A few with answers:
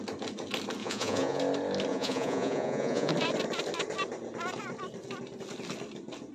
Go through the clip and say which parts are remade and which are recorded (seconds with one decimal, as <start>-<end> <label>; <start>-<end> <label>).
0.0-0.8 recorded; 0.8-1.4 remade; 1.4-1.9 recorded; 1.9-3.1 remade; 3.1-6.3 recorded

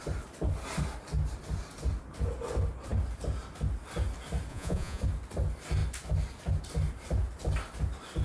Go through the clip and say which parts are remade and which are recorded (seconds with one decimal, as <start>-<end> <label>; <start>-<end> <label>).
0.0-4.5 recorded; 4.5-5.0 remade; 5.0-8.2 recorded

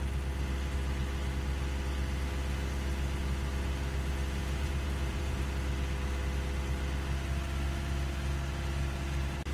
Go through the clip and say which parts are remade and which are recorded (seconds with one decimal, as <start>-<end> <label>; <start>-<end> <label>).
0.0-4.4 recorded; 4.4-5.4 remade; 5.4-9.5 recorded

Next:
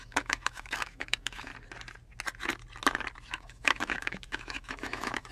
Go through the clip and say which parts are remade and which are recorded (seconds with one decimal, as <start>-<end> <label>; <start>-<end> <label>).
0.0-1.5 remade; 1.5-3.3 recorded; 3.3-5.3 remade

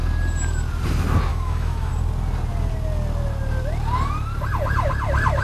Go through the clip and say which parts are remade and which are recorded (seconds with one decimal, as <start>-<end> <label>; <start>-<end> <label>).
0.0-1.3 recorded; 1.3-1.9 remade; 1.9-5.4 recorded